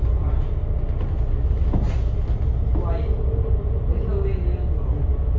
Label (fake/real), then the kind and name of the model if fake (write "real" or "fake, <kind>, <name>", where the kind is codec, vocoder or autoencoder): real